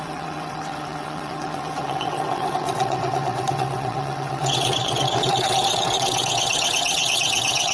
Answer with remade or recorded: remade